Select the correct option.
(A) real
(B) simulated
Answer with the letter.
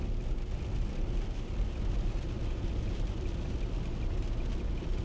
A